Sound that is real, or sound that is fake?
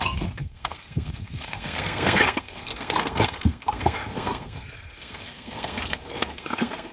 fake